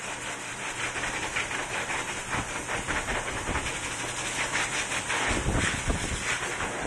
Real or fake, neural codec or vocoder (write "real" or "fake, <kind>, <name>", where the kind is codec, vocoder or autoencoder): fake, vocoder, BigVGAN v2